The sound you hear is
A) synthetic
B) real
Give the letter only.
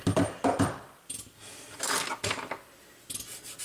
B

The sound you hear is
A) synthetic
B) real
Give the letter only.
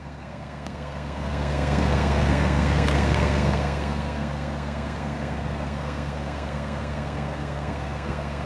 A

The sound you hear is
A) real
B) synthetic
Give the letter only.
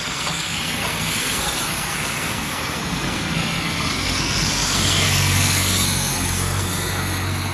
B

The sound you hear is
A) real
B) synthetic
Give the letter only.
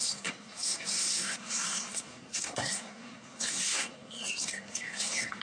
B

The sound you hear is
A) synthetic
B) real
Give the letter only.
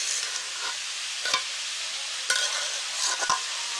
B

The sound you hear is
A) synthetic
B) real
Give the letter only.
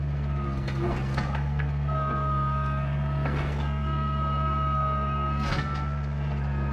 A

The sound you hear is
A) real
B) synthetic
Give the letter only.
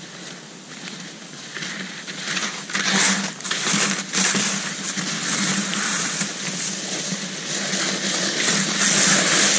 A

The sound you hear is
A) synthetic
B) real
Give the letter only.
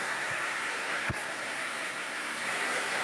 A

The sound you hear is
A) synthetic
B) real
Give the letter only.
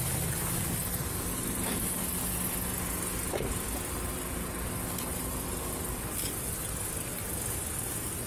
B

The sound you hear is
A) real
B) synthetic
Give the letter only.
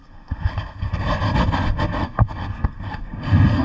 B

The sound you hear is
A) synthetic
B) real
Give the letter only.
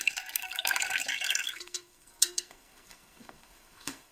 A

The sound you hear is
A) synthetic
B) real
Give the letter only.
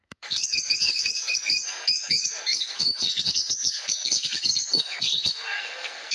A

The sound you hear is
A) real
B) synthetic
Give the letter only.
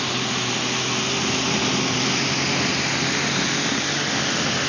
A